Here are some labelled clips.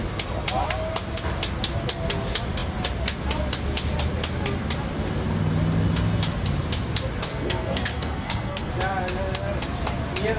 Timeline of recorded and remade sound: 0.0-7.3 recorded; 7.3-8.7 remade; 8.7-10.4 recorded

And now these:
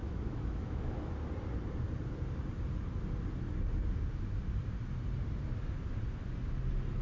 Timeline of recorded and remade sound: 0.0-1.1 remade; 1.1-7.0 recorded